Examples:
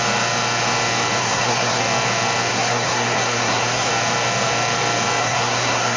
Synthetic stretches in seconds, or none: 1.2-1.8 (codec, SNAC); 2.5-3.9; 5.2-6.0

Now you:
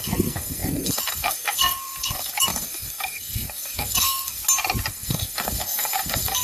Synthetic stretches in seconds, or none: 0.0-4.4 (codec, SNAC); 4.9-6.4

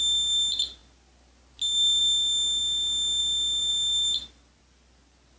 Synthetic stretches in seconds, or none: none

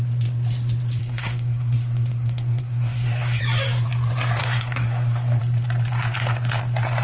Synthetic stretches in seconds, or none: 1.0-3.4 (codec, SNAC); 4.4-5.4

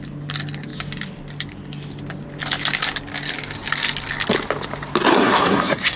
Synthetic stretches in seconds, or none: 5.1-6.0 (codec, SNAC)

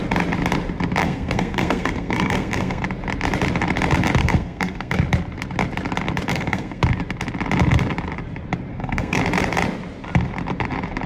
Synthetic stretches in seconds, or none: 1.0-2.8 (codec, SNAC); 4.2-5.0; 6.3-6.8; 8.7-9.2

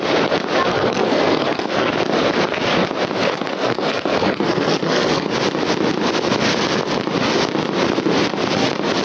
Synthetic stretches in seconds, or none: 0.7-1.9 (codec, SNAC); 3.2-5.3

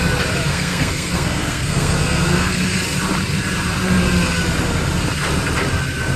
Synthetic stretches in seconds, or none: 0.5-2.8 (codec, SNAC)